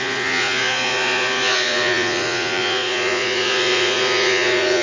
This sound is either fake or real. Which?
fake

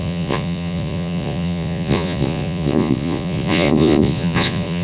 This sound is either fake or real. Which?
fake